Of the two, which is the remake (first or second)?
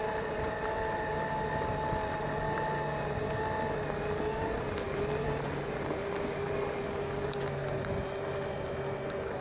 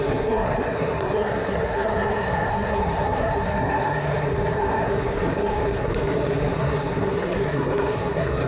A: second